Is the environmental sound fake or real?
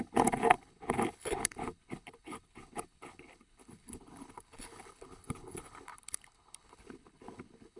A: fake